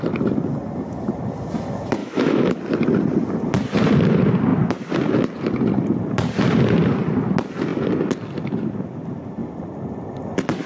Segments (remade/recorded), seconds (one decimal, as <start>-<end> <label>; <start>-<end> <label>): 0.0-2.0 recorded; 2.0-2.6 remade; 2.6-10.7 recorded